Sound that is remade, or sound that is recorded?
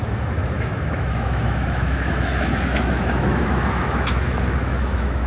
remade